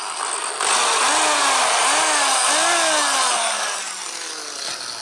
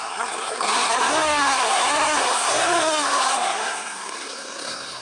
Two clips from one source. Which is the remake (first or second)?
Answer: second